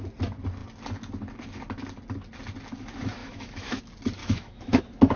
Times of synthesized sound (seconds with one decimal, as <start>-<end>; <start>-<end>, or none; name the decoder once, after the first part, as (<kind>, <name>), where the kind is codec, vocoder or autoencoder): 3.2-3.8 (autoencoder, DAC-VAE); 4.2-4.8